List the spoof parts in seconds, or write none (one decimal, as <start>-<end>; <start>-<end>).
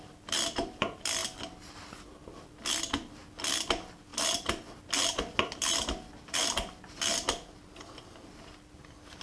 none